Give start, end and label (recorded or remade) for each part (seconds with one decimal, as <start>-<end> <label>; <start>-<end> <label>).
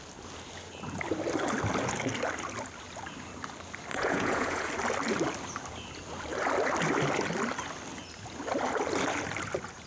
0.0-3.9 recorded; 3.9-4.7 remade; 4.7-9.9 recorded